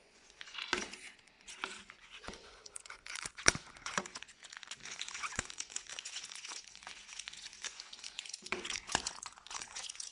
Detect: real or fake fake